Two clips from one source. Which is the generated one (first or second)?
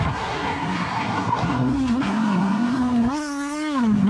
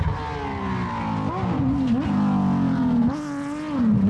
first